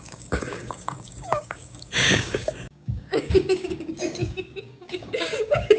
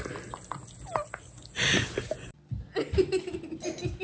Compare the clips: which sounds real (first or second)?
second